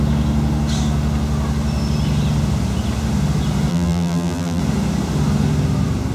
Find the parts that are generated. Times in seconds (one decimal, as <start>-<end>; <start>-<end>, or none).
3.7-4.6